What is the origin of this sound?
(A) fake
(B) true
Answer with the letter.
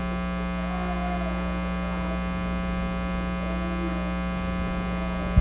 B